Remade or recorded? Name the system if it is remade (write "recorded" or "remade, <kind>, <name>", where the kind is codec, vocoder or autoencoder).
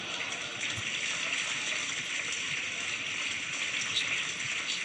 recorded